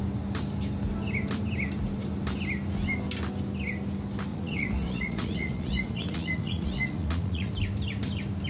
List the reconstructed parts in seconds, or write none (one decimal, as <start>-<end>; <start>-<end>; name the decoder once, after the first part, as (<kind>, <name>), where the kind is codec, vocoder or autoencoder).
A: 4.3-7.5 (vocoder, Vocos)